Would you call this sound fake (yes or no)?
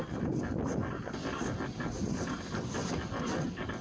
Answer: no